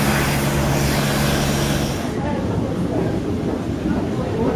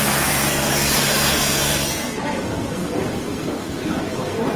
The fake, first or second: second